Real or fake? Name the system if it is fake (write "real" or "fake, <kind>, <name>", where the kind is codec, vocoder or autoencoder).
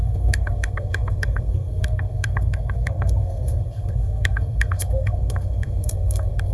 fake, codec, SNAC